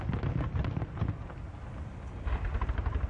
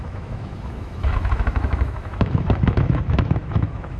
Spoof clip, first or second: second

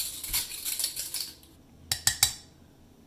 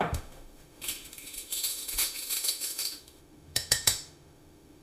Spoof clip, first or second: second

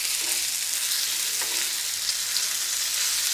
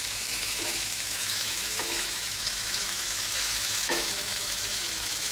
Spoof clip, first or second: second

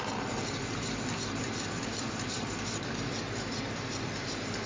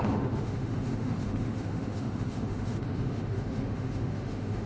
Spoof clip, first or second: second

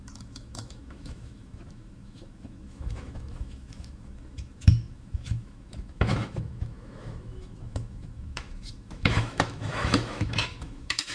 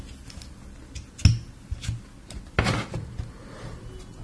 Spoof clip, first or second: first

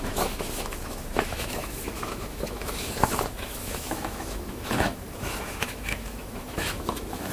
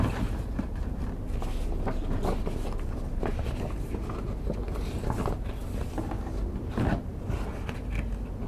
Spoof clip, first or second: first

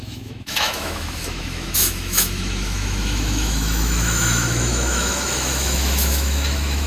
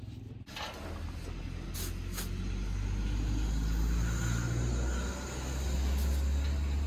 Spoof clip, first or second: first